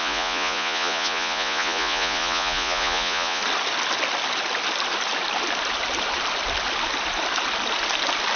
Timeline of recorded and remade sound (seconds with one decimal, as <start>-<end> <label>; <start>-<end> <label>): 0.0-3.4 remade; 3.4-8.4 recorded